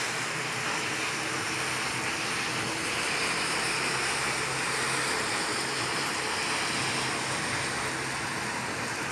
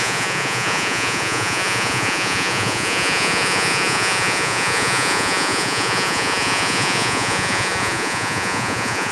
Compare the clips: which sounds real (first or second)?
first